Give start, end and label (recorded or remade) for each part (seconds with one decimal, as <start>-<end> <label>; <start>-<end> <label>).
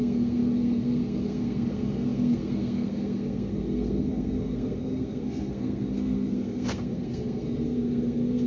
0.0-8.5 remade